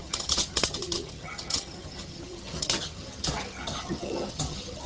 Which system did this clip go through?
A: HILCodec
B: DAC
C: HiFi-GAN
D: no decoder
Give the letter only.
C